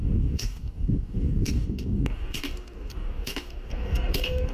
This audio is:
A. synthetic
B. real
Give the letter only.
A